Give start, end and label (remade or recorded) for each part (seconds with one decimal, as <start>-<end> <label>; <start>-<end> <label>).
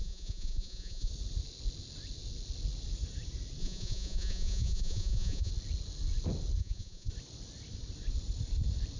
0.0-1.1 remade; 1.1-3.6 recorded; 3.6-5.5 remade; 5.5-6.6 recorded; 6.6-7.1 remade; 7.1-9.0 recorded